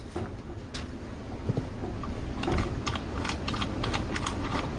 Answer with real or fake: real